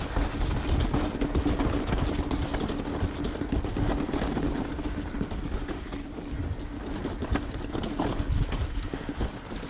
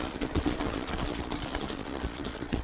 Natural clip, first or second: first